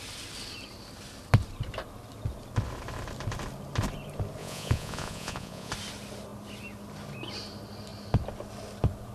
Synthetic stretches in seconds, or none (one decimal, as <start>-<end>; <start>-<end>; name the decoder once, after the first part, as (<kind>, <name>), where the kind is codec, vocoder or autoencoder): 4.4-5.7 (vocoder, Vocos)